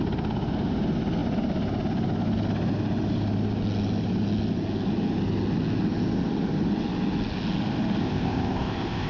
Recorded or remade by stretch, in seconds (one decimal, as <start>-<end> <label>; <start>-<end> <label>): 0.0-8.0 recorded; 8.0-9.1 remade